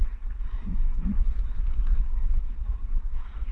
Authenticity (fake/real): fake